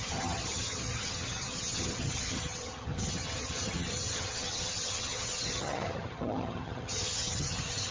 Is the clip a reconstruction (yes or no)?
yes